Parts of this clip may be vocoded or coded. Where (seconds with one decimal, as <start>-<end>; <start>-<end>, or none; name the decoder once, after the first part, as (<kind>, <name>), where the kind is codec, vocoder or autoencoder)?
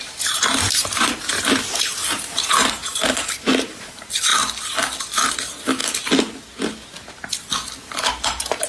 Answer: 0.0-4.3 (vocoder, BigVGAN v2); 5.3-5.8; 8.0-8.7